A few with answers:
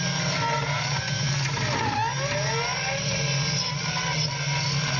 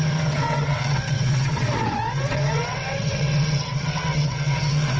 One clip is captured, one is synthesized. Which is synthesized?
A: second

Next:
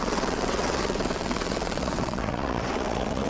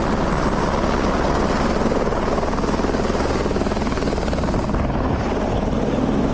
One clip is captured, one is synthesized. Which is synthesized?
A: first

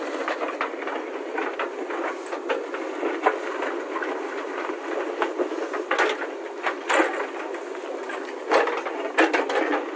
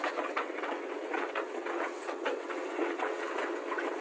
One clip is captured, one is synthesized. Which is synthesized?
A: second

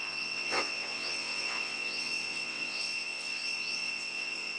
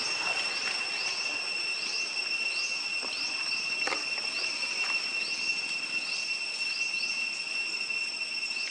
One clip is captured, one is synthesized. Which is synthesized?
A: first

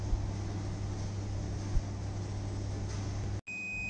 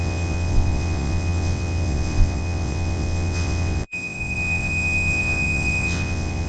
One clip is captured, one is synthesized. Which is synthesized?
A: second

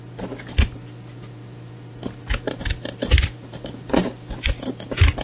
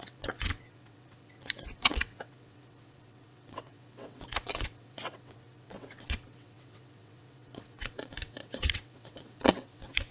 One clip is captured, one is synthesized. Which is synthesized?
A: second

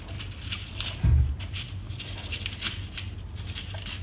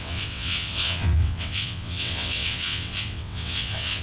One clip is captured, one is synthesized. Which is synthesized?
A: second